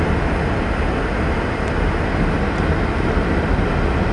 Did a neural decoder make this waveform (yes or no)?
no